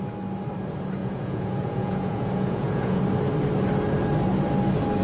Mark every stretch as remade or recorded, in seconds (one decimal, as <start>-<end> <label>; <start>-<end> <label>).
0.0-1.0 recorded; 1.0-3.0 remade; 3.0-5.0 recorded